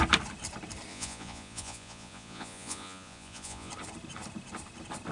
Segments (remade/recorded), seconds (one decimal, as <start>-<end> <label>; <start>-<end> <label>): 0.0-0.9 recorded; 0.9-3.7 remade; 3.7-5.1 recorded